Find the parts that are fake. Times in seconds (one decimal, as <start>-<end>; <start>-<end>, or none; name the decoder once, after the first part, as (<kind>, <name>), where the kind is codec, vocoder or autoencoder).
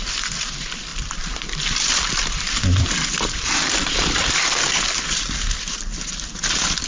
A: 0.9-5.0 (vocoder, BigVGAN v2)